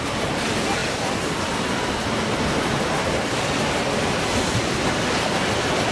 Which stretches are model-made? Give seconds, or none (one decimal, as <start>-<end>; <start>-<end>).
none